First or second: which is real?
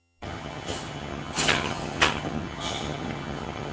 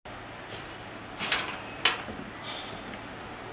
second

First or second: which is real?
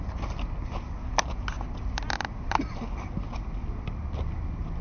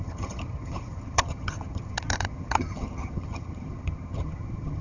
first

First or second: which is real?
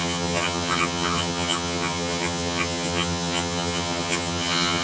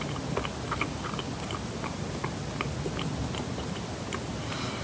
second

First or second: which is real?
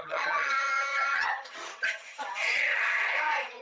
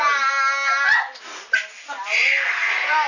second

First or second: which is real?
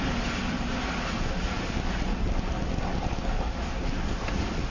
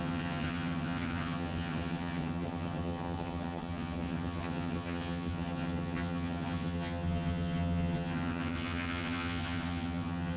first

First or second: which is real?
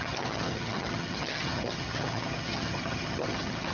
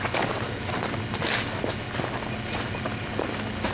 second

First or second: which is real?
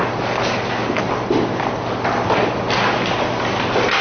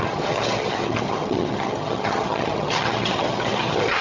first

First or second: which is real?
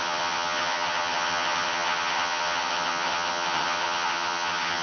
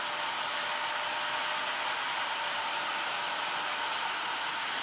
second